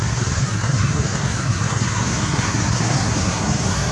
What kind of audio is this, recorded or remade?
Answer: remade